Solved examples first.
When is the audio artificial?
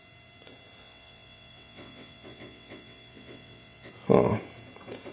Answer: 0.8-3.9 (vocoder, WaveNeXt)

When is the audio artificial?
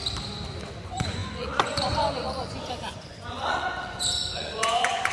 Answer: 0.7-5.1 (vocoder, Vocos)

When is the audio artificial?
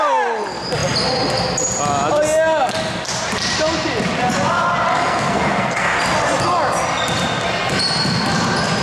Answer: 4.9-6.0 (codec, SNAC)